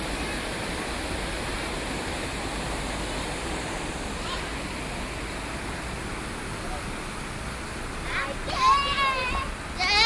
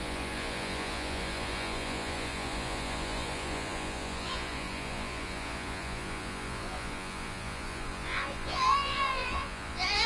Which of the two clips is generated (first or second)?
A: second